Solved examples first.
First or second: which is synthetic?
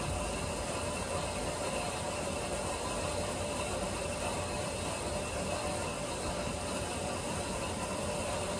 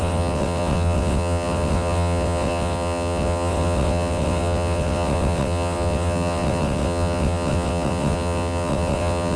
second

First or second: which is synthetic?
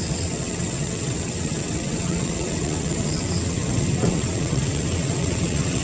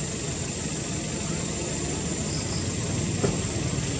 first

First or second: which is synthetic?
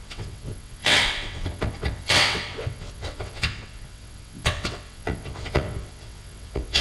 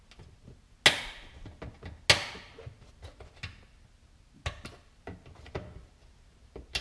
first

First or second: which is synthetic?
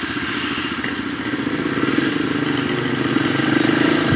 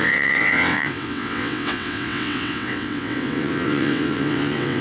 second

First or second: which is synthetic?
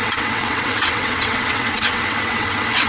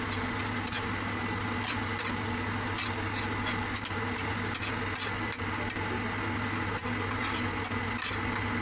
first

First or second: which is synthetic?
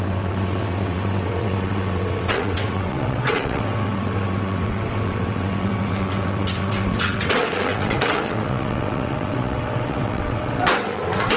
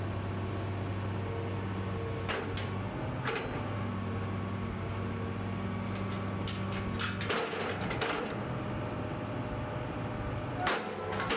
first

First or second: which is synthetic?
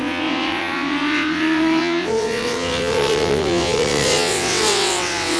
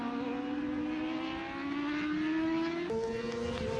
first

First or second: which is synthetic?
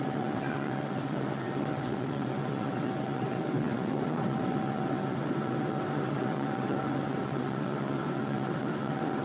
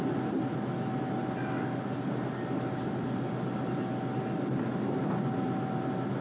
first